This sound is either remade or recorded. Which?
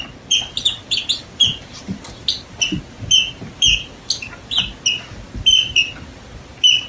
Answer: recorded